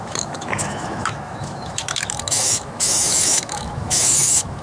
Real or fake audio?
fake